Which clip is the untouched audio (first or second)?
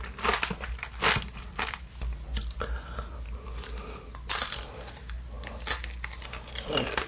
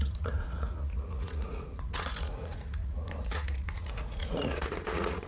first